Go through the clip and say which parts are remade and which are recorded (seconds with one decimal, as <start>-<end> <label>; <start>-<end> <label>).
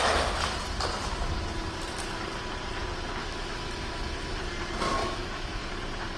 0.0-3.2 recorded; 3.2-4.4 remade; 4.4-5.0 recorded; 5.0-5.7 remade; 5.7-6.2 recorded